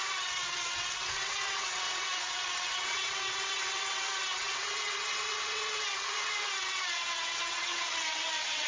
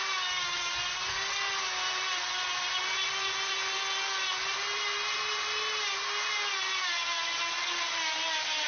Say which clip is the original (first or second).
second